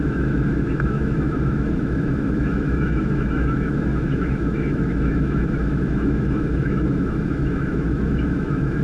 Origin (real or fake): fake